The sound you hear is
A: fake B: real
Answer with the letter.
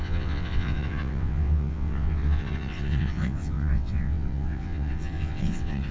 A